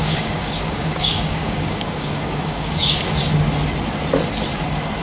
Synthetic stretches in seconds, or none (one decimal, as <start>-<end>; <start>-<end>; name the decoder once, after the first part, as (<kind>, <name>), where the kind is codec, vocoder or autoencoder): 0.0-3.0 (codec, DAC)